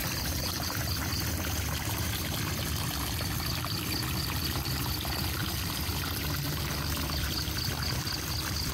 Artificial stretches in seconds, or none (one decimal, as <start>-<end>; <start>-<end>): 0.0-2.1